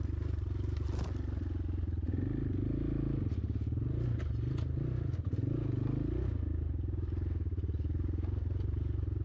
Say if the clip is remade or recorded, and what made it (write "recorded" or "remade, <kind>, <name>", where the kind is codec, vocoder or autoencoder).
recorded